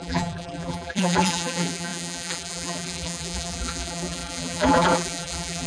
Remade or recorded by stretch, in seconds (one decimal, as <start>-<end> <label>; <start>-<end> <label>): 0.0-5.7 remade